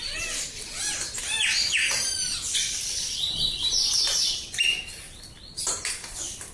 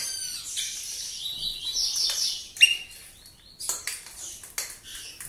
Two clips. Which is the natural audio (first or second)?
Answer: second